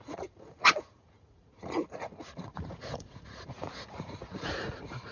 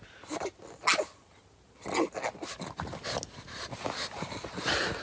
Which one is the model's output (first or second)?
first